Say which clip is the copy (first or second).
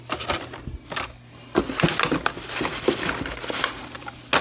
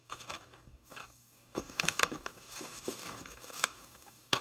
second